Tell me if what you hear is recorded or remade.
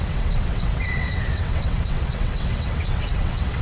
remade